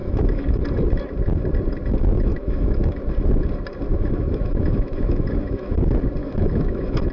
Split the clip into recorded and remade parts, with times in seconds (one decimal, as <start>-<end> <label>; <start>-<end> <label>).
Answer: 0.0-0.6 remade; 0.6-2.3 recorded; 2.3-3.0 remade; 3.0-3.9 recorded; 3.9-5.7 remade; 5.7-6.2 recorded; 6.2-7.1 remade